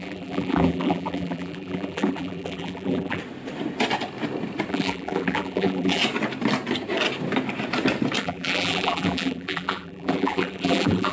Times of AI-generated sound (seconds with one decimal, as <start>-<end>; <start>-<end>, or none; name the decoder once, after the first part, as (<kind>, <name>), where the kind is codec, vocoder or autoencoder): 0.0-3.2 (vocoder, BigVGAN v2); 4.7-6.0; 8.2-11.1

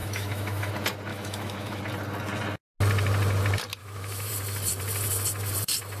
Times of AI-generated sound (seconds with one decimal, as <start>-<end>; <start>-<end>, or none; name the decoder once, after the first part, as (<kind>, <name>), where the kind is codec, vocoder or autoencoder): 0.0-0.7 (autoencoder, DAC-VAE); 1.1-1.8; 3.8-4.3

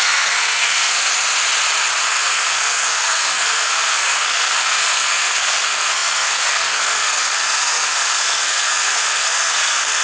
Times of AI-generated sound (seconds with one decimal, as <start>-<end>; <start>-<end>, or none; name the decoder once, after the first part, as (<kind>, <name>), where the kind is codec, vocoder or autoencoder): 0.0-1.1 (codec, SNAC); 2.1-10.0

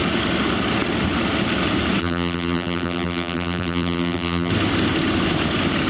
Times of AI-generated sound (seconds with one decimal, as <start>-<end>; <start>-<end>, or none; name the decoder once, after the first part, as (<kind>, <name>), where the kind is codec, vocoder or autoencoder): 2.0-4.5 (vocoder, BigVGAN v2)

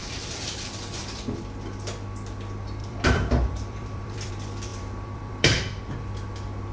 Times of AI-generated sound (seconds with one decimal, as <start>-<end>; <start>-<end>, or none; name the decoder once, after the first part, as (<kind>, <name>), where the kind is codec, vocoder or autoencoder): 0.0-1.2 (vocoder, BigVGAN v2); 2.8-4.3; 4.7-5.8

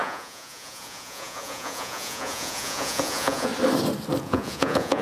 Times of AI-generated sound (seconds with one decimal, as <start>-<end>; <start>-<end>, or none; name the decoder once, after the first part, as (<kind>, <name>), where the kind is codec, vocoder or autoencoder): 0.0-3.5 (vocoder, Vocos); 4.2-5.0